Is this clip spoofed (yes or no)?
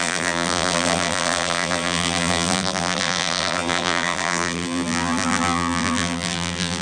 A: yes